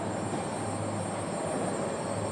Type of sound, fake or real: real